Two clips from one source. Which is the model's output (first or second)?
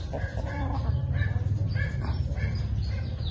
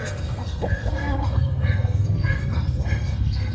second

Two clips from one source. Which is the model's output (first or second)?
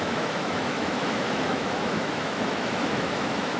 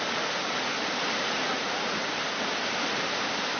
first